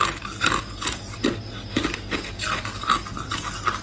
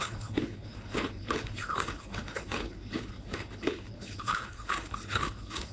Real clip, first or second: first